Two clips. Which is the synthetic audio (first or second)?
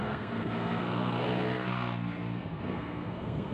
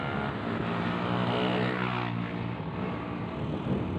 first